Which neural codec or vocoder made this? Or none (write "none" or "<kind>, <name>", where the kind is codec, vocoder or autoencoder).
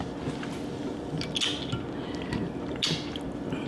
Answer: none